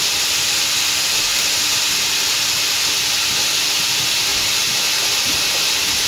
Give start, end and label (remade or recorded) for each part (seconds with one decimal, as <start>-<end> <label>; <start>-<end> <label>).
0.0-6.1 recorded